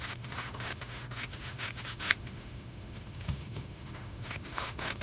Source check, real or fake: fake